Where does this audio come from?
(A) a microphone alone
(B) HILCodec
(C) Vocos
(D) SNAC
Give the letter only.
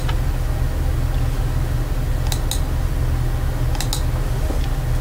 A